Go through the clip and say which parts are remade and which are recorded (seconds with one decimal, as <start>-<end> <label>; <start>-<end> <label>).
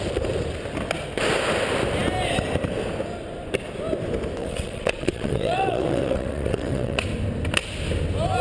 0.0-4.4 recorded; 4.4-7.0 remade; 7.0-8.4 recorded